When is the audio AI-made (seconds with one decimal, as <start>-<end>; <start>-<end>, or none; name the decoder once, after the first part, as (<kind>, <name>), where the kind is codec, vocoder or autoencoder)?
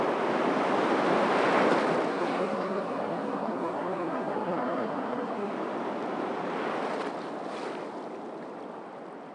2.1-5.5 (codec, SNAC)